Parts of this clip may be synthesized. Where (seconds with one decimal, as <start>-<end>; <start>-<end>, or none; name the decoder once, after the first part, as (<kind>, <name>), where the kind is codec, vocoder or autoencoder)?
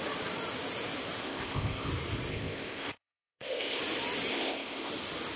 1.2-1.9 (codec, ZipCodec); 2.3-3.8; 4.3-4.9